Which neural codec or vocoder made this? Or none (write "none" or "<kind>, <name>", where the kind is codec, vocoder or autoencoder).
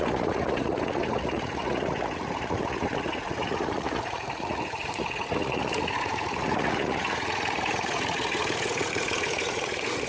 vocoder, Vocos